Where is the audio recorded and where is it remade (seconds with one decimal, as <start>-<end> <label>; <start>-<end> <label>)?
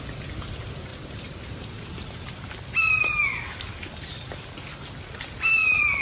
0.0-0.9 recorded; 0.9-3.4 remade; 3.4-6.0 recorded